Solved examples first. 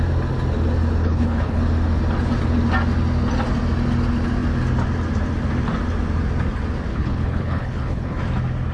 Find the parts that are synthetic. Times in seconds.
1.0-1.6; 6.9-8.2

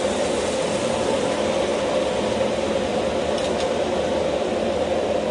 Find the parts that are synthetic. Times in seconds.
none

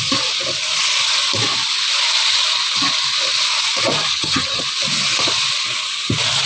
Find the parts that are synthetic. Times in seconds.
4.1-4.6

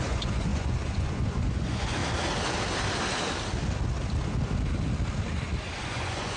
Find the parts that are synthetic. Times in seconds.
0.0-2.0; 5.8-6.4

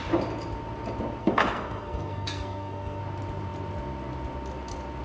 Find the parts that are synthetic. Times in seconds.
1.2-3.0

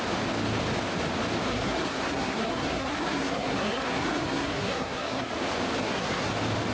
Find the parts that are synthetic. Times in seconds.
1.5-5.3; 5.8-6.3